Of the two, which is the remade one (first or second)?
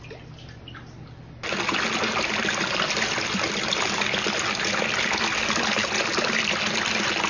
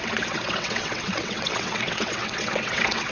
second